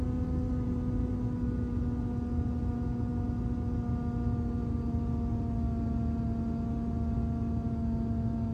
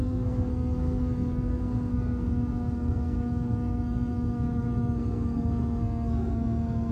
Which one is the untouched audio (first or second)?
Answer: first